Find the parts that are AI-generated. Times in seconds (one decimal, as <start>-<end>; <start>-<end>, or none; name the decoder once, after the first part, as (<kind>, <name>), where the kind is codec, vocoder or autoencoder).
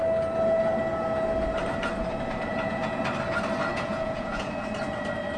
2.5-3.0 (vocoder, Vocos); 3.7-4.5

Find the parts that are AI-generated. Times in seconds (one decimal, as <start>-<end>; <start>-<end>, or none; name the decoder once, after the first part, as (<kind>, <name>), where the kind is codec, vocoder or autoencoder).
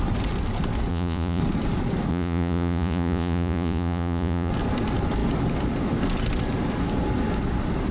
0.9-1.4 (vocoder, Vocos); 2.1-4.5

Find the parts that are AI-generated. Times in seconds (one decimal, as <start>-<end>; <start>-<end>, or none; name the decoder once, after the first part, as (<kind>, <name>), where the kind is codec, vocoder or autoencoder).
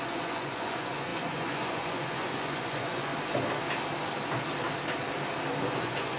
0.0-3.1 (vocoder, Vocos); 5.6-6.2